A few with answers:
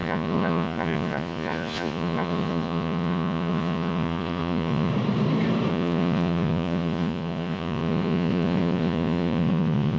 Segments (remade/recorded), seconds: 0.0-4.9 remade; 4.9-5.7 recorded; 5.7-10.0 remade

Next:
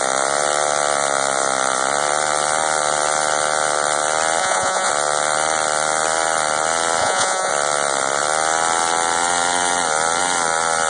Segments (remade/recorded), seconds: 0.0-4.4 recorded; 4.4-4.9 remade; 4.9-7.0 recorded; 7.0-7.5 remade; 7.5-10.9 recorded

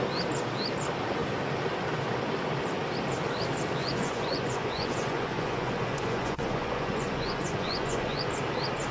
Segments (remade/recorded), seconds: 0.0-3.8 recorded; 3.8-8.3 remade; 8.3-8.9 recorded

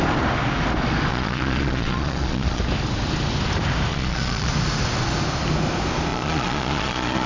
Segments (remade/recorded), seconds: 0.0-1.1 recorded; 1.1-2.6 remade; 2.6-3.9 recorded; 3.9-4.5 remade; 4.5-6.1 recorded; 6.1-7.3 remade